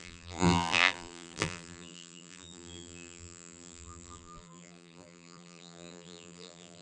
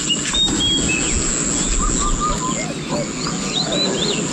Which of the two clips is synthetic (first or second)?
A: first